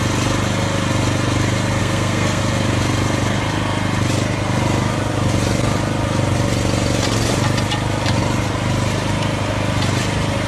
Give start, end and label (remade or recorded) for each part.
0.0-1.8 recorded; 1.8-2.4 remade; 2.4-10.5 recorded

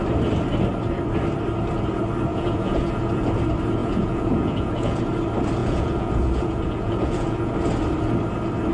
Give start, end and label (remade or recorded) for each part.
0.0-2.3 recorded; 2.3-3.0 remade; 3.0-3.8 recorded; 3.8-5.0 remade; 5.0-5.6 recorded; 5.6-7.5 remade; 7.5-8.7 recorded

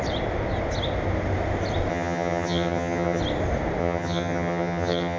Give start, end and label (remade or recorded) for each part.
0.0-1.9 recorded; 1.9-3.2 remade; 3.2-3.8 recorded; 3.8-5.2 remade

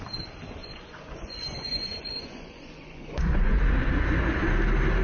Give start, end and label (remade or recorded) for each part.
0.0-0.6 recorded; 0.6-3.6 remade; 3.6-5.0 recorded

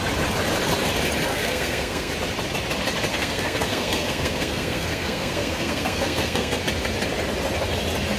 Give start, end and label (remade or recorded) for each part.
0.0-1.3 recorded; 1.3-2.1 remade; 2.1-3.1 recorded; 3.1-6.6 remade; 6.6-8.2 recorded

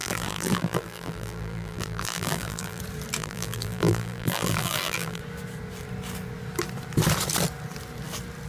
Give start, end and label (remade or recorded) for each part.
0.0-2.8 remade; 2.8-3.2 recorded; 3.2-5.2 remade; 5.2-8.5 recorded

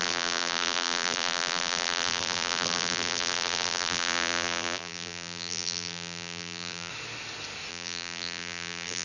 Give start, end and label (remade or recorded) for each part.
0.0-6.9 remade; 6.9-7.7 recorded; 7.7-9.0 remade

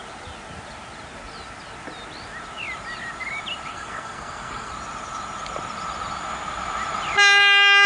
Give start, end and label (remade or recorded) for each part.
0.0-3.7 recorded; 3.7-4.7 remade; 4.7-7.9 recorded